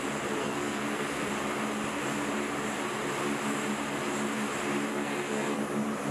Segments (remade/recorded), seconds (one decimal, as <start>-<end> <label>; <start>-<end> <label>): 0.0-0.4 recorded; 0.4-1.3 remade; 1.3-4.9 recorded; 4.9-5.6 remade; 5.6-6.1 recorded